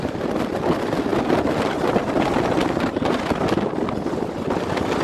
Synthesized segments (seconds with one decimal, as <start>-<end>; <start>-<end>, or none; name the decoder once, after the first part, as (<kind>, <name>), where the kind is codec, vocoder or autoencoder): none